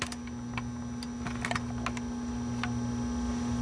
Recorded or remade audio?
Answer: recorded